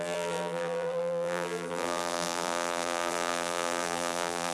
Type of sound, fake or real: fake